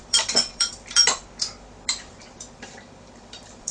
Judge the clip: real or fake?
fake